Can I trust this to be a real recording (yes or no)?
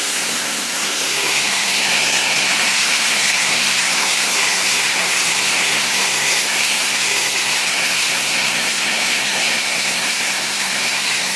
no